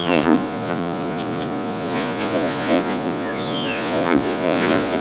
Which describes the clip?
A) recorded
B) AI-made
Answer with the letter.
B